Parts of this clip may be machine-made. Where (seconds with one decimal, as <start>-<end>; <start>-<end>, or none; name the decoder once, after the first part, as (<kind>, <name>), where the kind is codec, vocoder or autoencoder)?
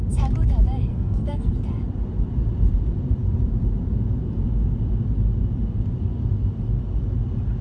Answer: 0.9-1.5 (codec, SNAC)